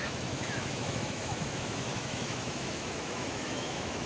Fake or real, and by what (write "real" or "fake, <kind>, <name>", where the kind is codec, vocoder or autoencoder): fake, autoencoder, DAC-VAE